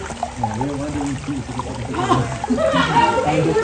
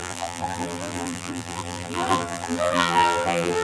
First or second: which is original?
first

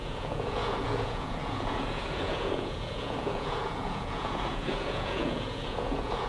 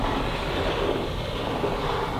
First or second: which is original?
second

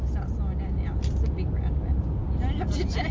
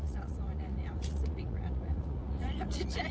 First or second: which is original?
first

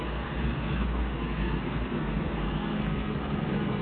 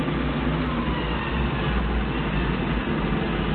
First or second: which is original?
second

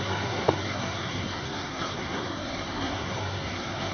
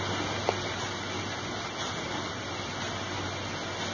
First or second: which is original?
second